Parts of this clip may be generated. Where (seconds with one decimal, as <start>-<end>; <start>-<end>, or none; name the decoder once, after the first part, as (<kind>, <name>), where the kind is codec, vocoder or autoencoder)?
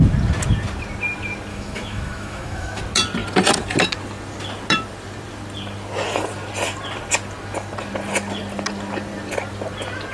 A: 1.5-2.8 (autoencoder, DAC-VAE)